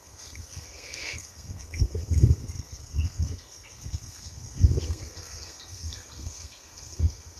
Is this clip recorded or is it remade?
remade